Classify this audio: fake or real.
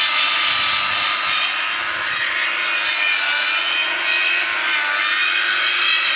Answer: real